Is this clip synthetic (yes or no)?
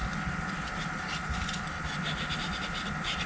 no